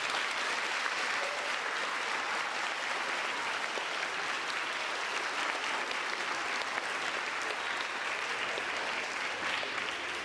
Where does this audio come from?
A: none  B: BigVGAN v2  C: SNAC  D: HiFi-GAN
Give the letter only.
B